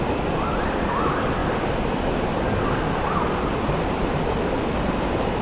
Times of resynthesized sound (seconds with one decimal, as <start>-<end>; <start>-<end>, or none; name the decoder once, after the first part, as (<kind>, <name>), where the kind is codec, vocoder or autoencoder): none